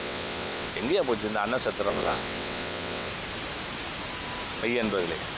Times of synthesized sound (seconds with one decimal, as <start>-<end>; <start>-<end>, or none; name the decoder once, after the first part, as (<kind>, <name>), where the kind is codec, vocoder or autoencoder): 0.0-0.7 (vocoder, WaveNeXt); 1.9-3.1